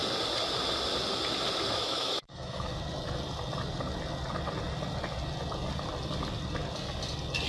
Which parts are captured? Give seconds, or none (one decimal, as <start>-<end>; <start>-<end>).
0.0-1.7; 2.7-7.5